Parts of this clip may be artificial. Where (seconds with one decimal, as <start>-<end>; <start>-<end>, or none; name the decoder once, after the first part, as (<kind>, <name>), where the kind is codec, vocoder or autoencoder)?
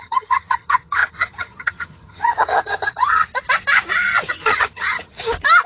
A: 0.0-3.2 (vocoder, HiFi-GAN); 4.3-5.1